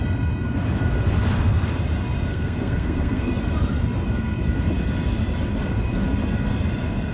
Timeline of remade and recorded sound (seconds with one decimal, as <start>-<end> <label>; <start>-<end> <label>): 0.0-2.3 recorded; 2.3-3.4 remade; 3.4-7.1 recorded